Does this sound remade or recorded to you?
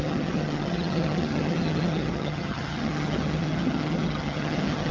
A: remade